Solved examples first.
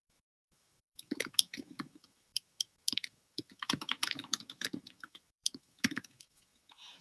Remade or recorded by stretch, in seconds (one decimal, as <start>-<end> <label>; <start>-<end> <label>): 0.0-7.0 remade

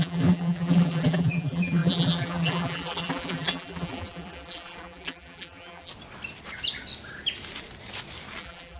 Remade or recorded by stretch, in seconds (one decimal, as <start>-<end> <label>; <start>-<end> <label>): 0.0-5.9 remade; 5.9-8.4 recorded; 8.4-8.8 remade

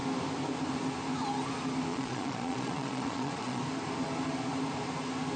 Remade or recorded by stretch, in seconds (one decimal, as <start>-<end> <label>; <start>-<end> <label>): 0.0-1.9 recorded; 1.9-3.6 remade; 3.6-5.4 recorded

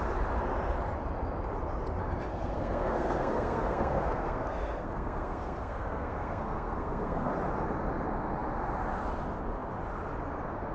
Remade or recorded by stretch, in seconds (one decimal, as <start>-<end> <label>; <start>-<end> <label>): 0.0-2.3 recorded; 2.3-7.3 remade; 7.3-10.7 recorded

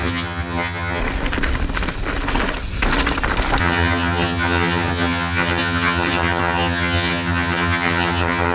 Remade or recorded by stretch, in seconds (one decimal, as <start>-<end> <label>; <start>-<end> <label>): 0.0-1.0 remade; 1.0-3.6 recorded; 3.6-8.5 remade

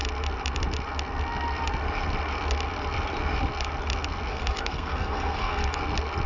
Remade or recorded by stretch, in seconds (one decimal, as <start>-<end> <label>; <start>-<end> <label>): 0.0-4.3 recorded; 4.3-5.8 remade; 5.8-6.3 recorded

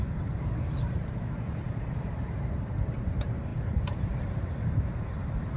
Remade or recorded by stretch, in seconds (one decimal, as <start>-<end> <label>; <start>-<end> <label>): 0.0-5.6 remade

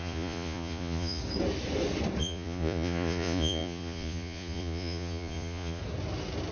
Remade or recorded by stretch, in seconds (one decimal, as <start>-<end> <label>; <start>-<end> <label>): 0.0-1.2 remade; 1.2-2.2 recorded; 2.2-5.8 remade; 5.8-6.5 recorded